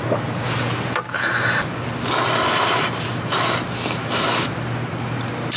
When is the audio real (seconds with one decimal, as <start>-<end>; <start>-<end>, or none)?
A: 0.0-4.0; 4.5-5.6